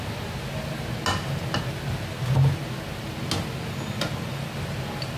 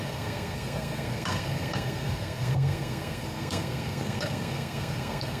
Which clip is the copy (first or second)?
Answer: second